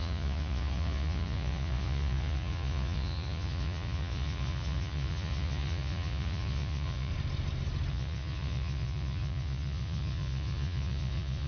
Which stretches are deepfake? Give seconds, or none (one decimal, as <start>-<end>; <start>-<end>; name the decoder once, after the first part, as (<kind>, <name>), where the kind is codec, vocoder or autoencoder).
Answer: 0.0-7.1 (vocoder, Vocos); 7.9-11.5